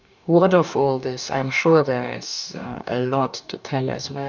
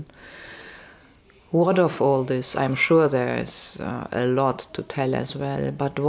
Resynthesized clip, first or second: first